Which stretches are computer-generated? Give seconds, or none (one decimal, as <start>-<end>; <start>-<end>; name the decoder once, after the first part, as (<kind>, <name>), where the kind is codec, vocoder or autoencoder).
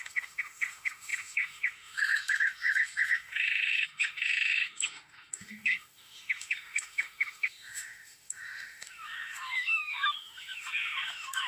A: 0.0-11.5 (autoencoder, DAC-VAE)